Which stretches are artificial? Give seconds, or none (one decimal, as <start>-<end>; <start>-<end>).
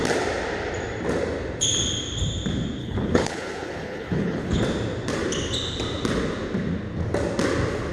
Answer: 2.8-4.6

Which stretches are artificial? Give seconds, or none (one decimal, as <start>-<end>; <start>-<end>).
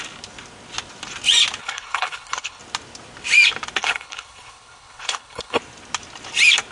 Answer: 1.6-2.6; 3.8-5.6